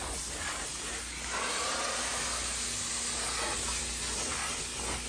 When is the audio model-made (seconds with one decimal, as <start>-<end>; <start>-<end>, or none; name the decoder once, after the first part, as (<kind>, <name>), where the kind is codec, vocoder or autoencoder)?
none